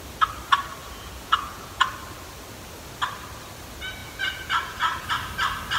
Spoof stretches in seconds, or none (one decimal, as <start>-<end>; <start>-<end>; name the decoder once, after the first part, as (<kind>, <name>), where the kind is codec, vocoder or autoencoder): 0.8-1.9 (vocoder, Vocos); 4.0-5.1